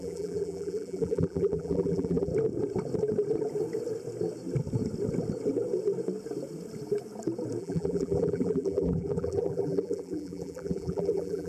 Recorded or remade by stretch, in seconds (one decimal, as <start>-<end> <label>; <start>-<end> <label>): 0.0-2.3 remade; 2.3-7.6 recorded; 7.6-11.5 remade